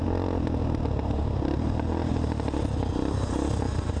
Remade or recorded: recorded